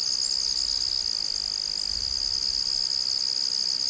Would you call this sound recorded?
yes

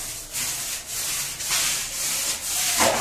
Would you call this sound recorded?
yes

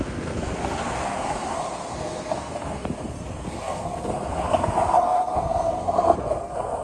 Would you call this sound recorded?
no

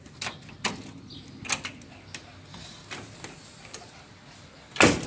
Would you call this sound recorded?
yes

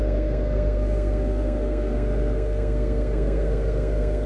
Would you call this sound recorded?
no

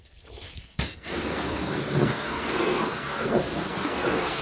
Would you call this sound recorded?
no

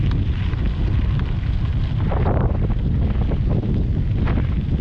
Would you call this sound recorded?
yes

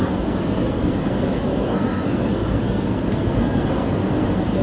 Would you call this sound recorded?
no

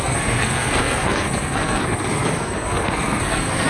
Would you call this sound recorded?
no